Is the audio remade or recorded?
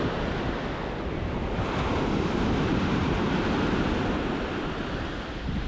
recorded